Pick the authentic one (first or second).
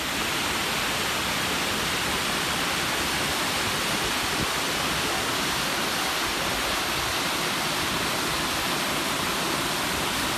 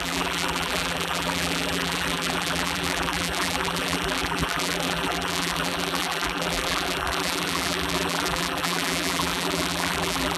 first